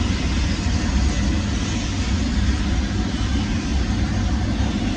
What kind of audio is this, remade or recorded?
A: recorded